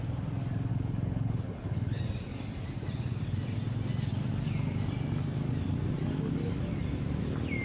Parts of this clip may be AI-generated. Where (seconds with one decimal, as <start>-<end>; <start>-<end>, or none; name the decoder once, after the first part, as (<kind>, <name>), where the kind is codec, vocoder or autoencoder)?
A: 0.7-2.0 (codec, HILCodec)